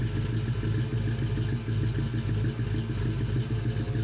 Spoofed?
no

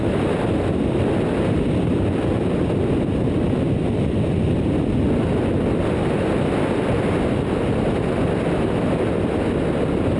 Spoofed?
no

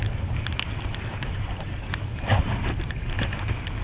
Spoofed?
no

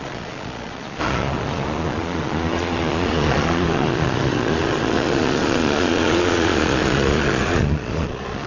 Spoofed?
yes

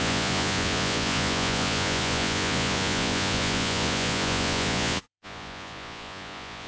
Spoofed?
yes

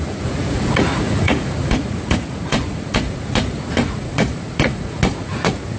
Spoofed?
yes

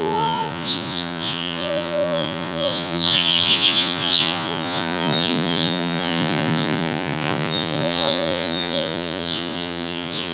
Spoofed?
yes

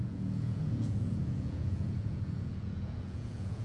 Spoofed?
yes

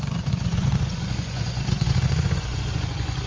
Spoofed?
yes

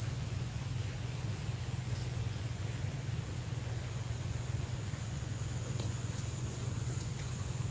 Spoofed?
yes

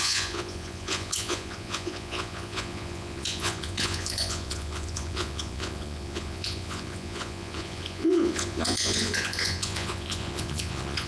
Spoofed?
yes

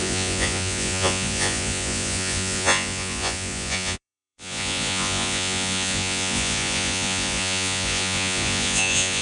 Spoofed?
yes